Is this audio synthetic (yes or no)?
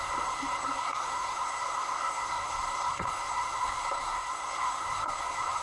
yes